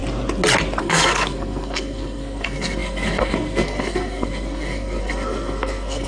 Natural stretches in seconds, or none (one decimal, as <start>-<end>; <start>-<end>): 0.0-0.8